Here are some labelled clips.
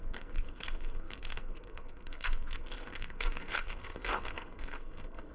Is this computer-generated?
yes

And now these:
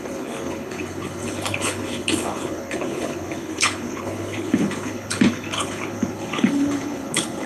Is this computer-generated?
yes